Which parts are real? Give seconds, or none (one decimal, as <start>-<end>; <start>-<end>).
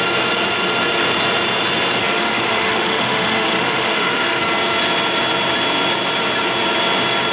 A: 0.0-2.0; 4.4-7.3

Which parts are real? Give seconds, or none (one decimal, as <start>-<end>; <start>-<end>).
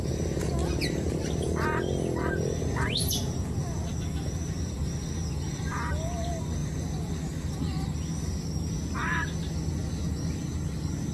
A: 0.0-11.1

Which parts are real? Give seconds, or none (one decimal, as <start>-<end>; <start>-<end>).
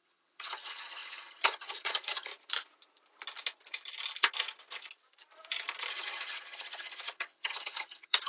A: 2.3-5.9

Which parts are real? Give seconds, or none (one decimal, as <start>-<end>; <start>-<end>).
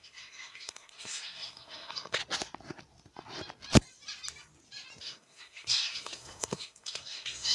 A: 2.2-5.0